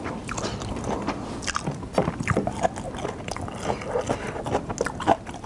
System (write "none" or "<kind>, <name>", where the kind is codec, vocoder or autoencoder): none